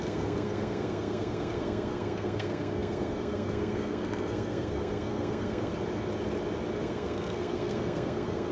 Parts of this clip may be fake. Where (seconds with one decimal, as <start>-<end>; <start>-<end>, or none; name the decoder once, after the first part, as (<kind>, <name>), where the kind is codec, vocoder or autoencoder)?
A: 0.0-5.7 (codec, SNAC); 6.8-8.5